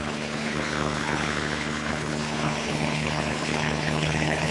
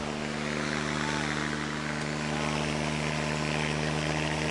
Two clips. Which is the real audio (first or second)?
second